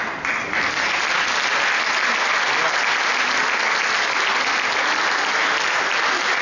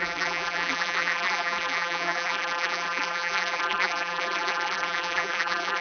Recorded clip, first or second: first